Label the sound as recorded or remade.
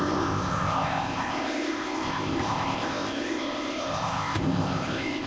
remade